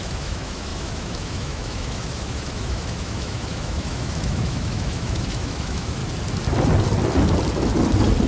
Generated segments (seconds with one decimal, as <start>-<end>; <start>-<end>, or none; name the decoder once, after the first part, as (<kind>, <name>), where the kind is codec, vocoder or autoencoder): 0.0-6.0 (autoencoder, DAC-VAE)